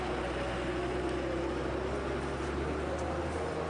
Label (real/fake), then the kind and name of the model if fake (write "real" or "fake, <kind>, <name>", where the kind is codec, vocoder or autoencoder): real